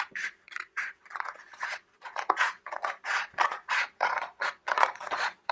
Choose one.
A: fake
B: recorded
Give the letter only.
A